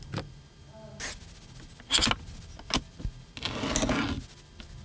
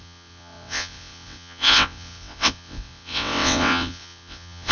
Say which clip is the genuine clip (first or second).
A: first